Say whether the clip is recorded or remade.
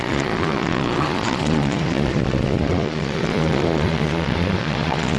remade